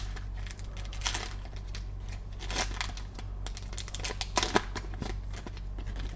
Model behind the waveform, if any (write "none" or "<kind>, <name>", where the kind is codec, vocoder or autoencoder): none